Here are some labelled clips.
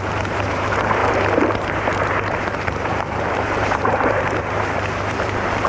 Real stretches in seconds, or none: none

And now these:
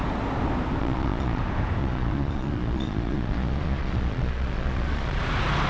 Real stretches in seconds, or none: 0.0-0.8; 1.4-1.8; 5.2-5.7

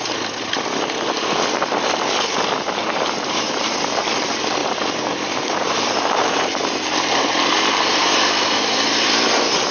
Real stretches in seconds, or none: 0.0-2.8; 3.7-4.6

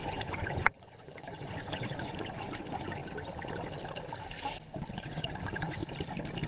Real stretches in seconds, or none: 3.0-4.9; 5.8-6.5

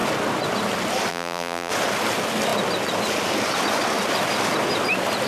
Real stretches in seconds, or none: 0.0-1.1; 1.7-5.3